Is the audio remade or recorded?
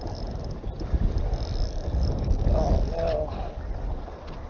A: recorded